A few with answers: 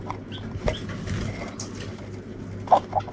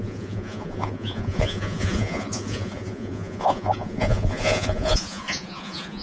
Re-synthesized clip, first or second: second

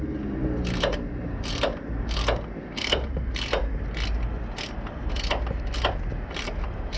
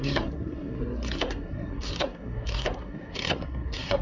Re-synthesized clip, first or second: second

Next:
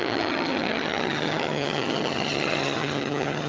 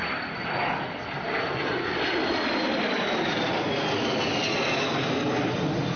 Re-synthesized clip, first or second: first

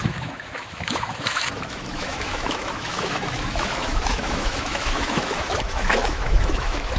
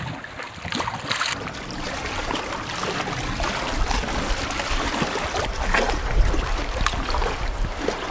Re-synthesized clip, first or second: first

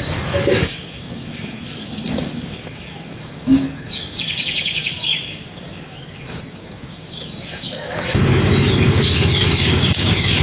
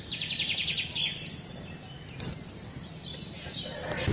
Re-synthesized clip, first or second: first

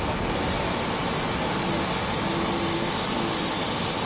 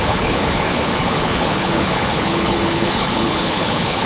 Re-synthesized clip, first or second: second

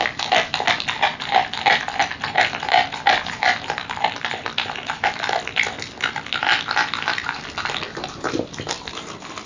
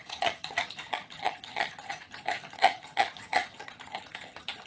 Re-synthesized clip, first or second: second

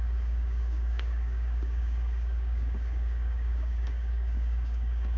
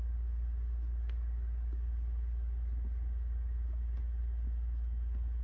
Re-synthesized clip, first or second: first